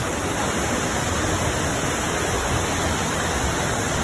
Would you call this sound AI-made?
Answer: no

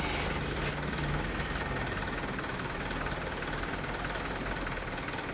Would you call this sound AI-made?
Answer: no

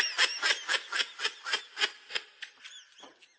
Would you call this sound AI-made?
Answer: no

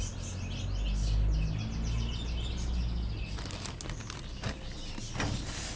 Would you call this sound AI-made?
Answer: no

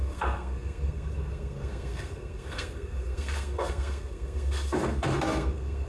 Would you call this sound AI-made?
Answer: yes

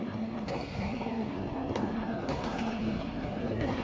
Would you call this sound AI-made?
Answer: yes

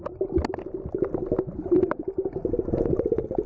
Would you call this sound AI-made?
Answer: no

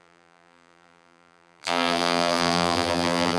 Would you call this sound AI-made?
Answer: yes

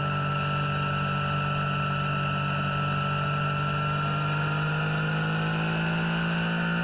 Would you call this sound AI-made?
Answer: no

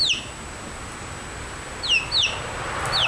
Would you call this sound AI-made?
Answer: no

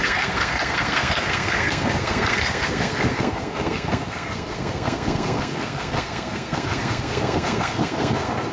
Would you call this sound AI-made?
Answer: yes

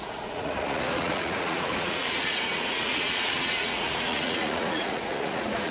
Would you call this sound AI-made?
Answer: yes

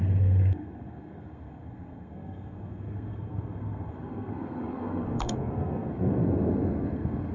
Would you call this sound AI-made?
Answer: yes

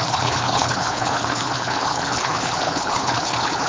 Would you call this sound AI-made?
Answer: yes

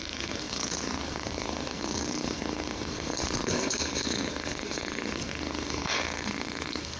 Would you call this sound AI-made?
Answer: yes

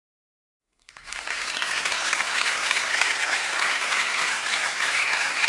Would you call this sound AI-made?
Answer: yes